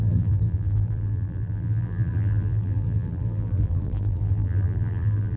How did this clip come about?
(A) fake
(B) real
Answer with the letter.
A